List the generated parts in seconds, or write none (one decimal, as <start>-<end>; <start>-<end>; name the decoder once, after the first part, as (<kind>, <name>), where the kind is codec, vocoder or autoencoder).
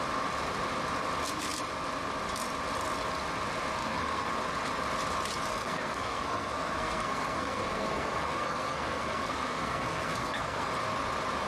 3.8-4.3 (codec, SNAC); 5.5-10.7